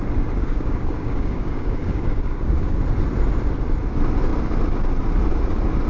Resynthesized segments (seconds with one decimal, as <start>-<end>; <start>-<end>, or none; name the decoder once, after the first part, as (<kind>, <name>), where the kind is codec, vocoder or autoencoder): 0.4-2.8 (codec, DAC)